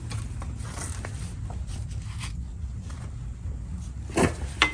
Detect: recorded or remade recorded